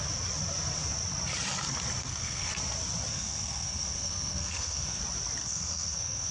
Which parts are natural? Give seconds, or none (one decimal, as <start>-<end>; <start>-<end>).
0.0-2.0; 2.5-3.1; 5.0-5.4